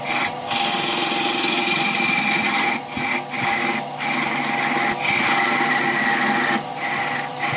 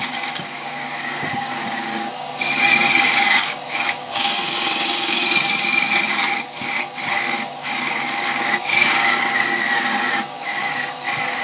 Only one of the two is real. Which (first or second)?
first